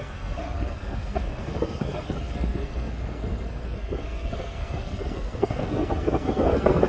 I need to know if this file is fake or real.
fake